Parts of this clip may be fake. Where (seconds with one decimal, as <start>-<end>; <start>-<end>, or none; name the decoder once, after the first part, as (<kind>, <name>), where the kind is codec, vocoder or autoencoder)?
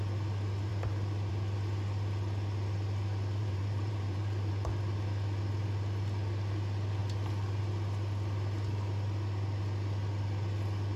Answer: 3.4-4.5 (vocoder, BigVGAN v2)